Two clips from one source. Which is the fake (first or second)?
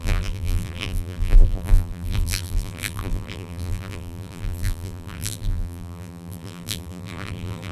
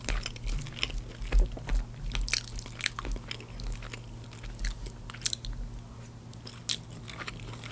first